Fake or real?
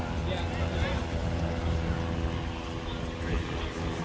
real